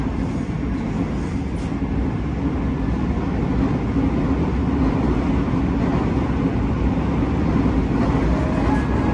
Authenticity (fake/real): real